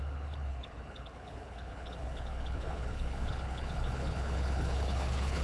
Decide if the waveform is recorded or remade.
remade